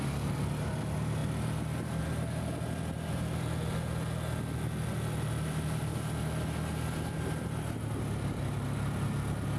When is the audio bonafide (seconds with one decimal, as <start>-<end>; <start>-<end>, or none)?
0.0-9.6